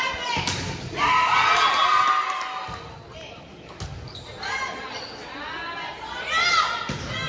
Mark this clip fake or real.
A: real